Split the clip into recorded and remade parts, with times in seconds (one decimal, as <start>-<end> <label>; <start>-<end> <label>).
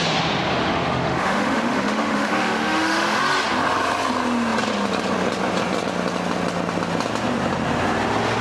0.0-0.6 recorded; 0.6-3.2 remade; 3.2-8.4 recorded